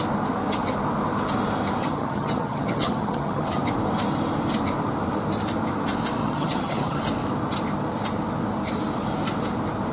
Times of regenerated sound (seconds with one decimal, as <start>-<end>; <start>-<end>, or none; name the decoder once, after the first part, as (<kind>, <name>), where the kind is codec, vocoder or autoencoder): 1.8-3.6 (vocoder, HiFi-GAN); 6.2-7.0